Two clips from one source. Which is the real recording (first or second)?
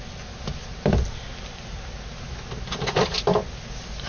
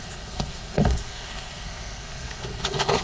first